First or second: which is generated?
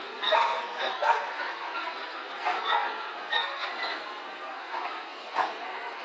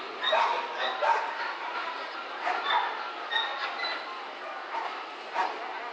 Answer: first